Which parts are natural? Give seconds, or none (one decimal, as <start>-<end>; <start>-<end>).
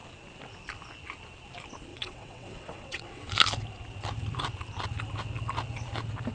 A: 0.0-1.9; 3.3-6.3